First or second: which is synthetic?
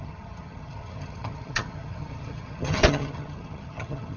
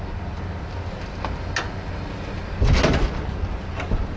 first